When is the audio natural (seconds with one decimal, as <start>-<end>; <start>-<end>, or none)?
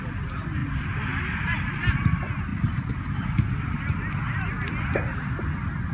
0.0-5.9